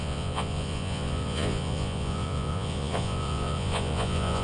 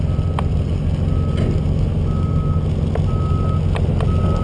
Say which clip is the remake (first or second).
first